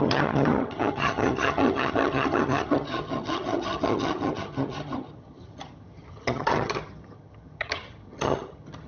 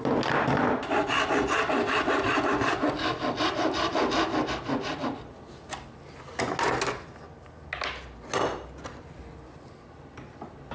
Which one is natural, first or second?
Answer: second